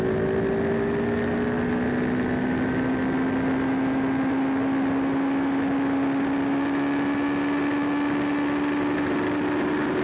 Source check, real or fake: real